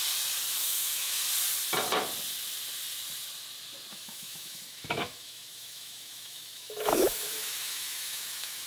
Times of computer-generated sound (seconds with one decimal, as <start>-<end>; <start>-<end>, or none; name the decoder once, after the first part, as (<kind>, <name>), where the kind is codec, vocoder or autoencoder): 0.6-1.2 (autoencoder, DAC-VAE); 3.9-8.7